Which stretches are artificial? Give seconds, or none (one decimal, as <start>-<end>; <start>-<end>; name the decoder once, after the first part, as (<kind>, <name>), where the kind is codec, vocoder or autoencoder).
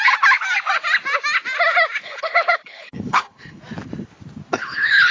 2.0-3.6 (codec, HILCodec); 4.5-5.1